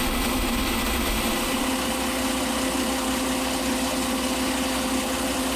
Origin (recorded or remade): recorded